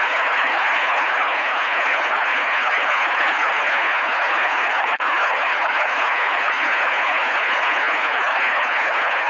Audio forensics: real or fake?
fake